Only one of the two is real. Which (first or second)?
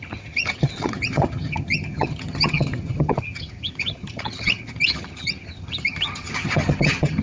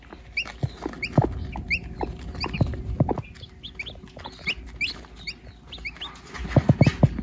second